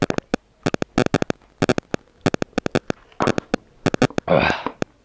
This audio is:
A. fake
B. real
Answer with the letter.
B